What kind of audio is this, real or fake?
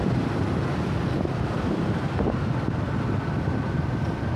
real